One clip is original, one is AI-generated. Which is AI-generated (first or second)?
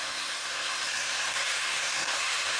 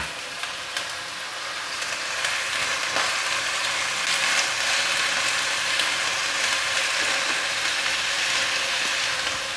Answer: first